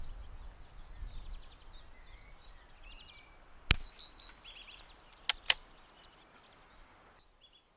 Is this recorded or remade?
recorded